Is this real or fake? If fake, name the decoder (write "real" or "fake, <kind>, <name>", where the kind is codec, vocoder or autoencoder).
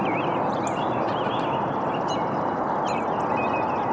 real